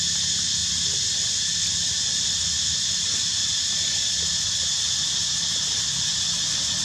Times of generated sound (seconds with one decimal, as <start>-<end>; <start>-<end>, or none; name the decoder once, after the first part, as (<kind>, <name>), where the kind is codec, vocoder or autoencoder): none